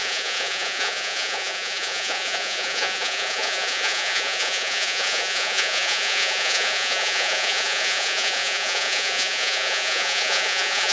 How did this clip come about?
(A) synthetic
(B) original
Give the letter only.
A